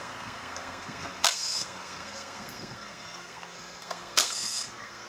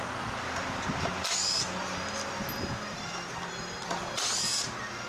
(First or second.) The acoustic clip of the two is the second